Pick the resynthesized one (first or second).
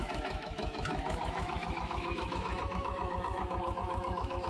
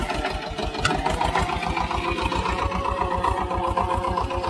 first